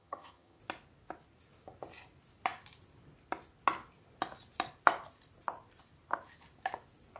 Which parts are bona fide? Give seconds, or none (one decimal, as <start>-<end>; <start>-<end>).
0.6-7.2